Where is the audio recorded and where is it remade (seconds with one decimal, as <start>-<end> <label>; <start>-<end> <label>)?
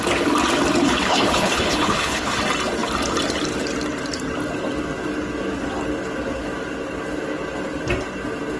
0.0-1.1 recorded; 1.1-2.4 remade; 2.4-8.6 recorded